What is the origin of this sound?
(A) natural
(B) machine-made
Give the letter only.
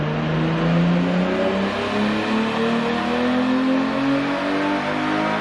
A